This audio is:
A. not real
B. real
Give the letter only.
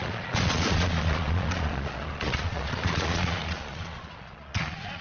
A